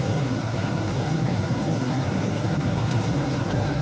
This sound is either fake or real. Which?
fake